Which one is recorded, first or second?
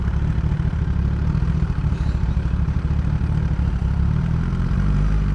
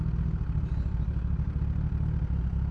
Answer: second